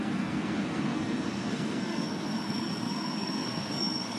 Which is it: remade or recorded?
remade